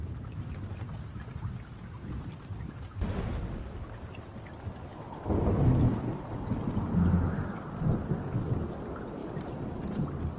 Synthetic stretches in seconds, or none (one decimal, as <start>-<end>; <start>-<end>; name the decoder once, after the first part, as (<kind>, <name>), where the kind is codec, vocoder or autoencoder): none